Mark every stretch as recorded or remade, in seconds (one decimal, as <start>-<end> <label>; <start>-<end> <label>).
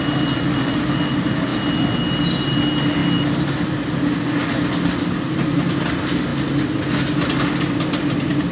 0.0-8.5 recorded